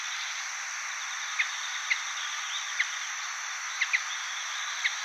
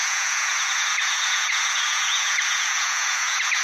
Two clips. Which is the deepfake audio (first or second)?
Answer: second